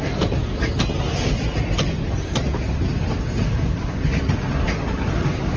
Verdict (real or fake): real